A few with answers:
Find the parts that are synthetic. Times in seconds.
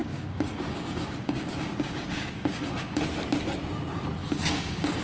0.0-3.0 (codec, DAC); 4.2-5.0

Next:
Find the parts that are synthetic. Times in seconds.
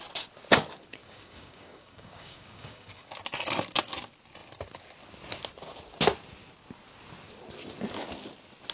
1.0-3.1 (codec, DAC)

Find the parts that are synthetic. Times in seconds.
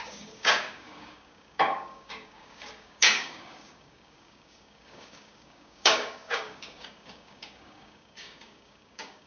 0.0-9.3 (codec, DAC)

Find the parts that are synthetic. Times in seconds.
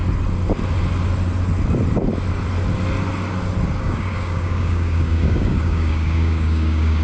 3.8-7.0 (codec, DAC)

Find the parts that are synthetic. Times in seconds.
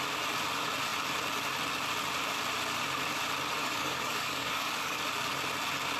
3.6-5.0 (codec, DAC)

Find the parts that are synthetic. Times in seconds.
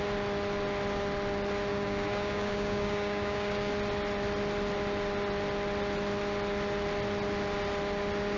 1.7-3.7 (codec, DAC)